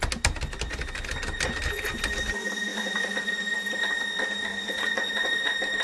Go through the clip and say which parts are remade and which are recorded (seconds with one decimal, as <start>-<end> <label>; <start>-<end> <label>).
0.0-2.7 recorded; 2.7-3.2 remade; 3.2-4.5 recorded; 4.5-5.3 remade; 5.3-5.8 recorded